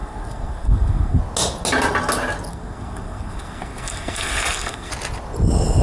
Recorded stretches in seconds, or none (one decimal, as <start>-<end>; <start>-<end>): 1.2-2.5; 4.9-5.8

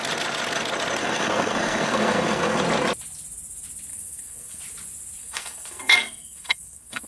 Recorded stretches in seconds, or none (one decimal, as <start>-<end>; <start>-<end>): 0.0-1.0; 2.6-3.9; 4.6-5.2

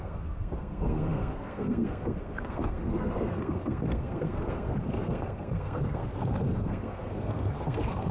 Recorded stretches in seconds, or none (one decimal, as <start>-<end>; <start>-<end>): none

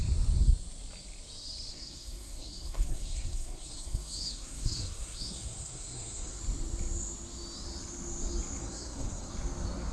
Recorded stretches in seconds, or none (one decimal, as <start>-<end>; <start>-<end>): 0.0-1.7; 6.4-8.6; 9.3-9.9